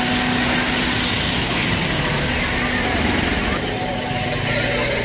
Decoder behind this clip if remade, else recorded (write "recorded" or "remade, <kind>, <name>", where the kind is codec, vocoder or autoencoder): recorded